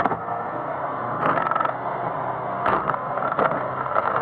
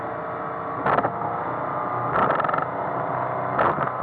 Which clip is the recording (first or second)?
second